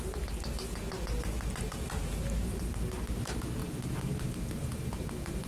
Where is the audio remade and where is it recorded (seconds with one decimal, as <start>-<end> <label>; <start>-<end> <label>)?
0.0-5.5 recorded